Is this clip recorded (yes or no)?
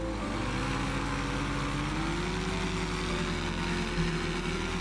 yes